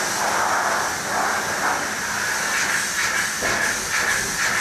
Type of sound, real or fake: real